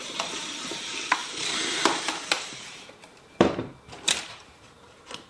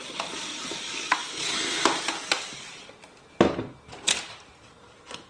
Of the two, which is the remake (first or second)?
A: first